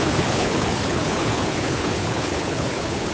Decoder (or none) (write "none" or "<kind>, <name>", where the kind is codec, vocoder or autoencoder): codec, HILCodec